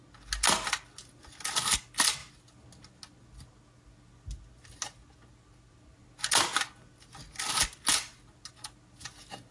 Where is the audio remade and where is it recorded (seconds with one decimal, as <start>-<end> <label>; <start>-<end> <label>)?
0.0-9.5 recorded